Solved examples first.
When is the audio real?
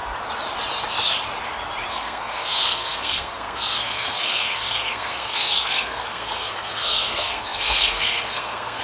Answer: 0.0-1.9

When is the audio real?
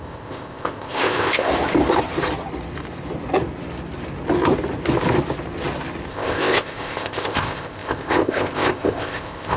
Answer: 1.5-6.1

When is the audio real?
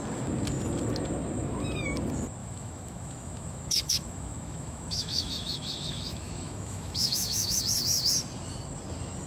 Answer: 0.0-2.4; 7.6-9.3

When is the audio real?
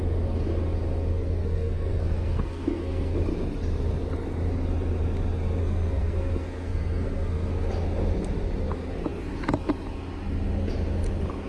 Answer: 0.0-1.1; 3.2-5.6; 7.5-11.5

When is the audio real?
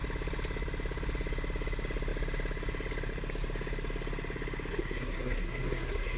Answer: 0.0-4.7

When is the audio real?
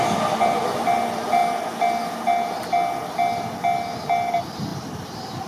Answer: 1.4-4.3; 4.7-5.5